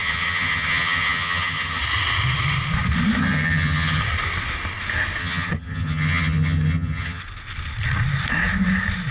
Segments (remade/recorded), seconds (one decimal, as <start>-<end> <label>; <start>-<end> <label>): 0.0-1.8 remade; 1.8-3.2 recorded; 3.2-4.0 remade; 4.0-5.2 recorded; 5.2-7.2 remade; 7.2-9.1 recorded